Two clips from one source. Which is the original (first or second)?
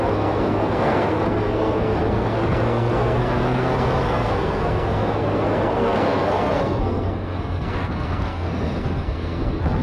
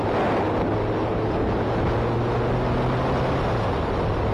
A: second